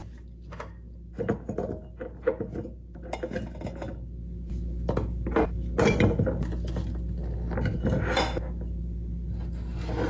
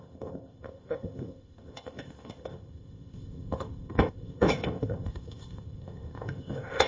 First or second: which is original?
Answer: first